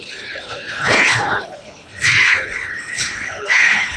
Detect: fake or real fake